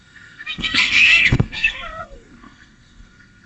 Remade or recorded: remade